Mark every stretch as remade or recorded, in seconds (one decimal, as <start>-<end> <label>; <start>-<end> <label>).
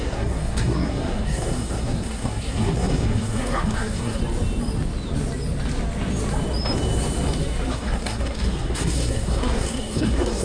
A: 0.0-4.2 remade; 4.2-7.7 recorded; 7.7-10.4 remade